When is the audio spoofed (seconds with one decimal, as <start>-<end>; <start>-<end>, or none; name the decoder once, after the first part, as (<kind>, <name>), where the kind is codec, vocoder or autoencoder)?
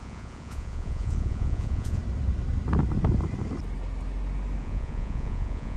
0.0-2.0 (vocoder, Vocos); 4.6-5.8